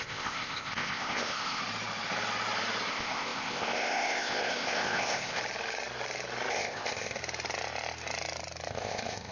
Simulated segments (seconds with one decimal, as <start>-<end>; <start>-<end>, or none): 0.0-1.6; 2.9-5.4; 6.5-7.2; 8.7-9.3